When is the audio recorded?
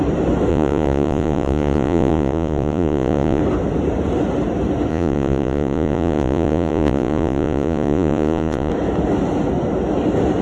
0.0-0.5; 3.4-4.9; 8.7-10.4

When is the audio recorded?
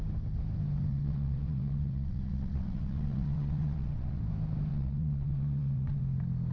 0.0-0.9; 4.2-4.7; 6.0-6.5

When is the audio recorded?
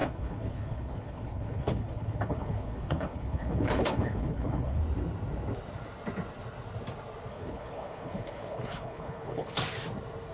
4.8-7.3; 9.6-10.3